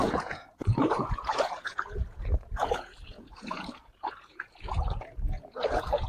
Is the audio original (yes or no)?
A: no